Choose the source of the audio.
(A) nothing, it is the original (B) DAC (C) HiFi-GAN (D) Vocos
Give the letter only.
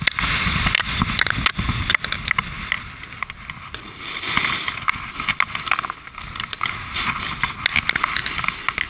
A